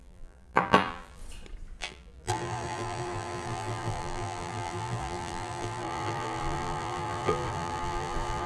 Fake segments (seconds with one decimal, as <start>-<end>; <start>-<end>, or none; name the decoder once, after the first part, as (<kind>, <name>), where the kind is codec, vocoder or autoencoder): 0.0-1.2 (vocoder, BigVGAN v2); 1.8-8.5